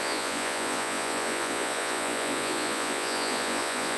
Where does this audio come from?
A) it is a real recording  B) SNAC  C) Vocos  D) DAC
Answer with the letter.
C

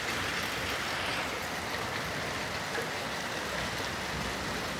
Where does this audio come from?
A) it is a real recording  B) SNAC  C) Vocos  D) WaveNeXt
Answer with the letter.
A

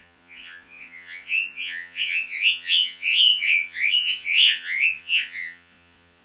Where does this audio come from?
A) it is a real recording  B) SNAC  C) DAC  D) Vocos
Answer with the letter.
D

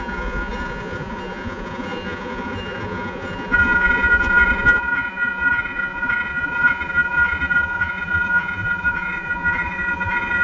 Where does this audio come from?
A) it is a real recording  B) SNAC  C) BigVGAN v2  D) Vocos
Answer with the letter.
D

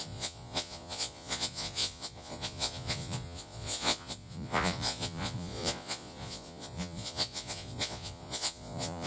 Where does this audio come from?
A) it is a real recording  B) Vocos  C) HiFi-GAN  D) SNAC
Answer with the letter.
B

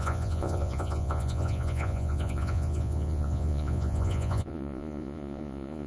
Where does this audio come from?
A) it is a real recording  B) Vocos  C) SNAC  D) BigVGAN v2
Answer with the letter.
B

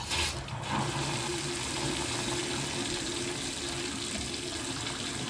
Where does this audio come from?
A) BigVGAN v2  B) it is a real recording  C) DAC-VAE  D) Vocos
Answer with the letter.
B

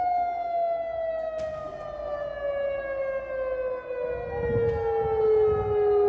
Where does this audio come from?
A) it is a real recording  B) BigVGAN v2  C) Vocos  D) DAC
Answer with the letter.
A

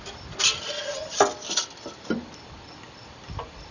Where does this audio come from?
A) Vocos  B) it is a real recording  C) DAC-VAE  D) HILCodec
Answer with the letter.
B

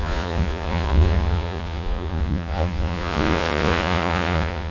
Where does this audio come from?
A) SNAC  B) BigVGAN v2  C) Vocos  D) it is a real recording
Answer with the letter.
C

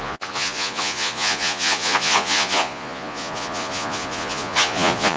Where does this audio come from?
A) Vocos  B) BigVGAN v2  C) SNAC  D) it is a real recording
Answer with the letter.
A